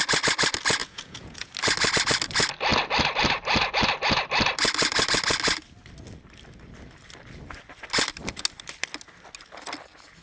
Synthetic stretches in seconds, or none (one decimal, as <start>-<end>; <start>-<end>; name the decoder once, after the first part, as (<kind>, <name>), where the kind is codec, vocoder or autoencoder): 0.8-1.5 (vocoder, Vocos)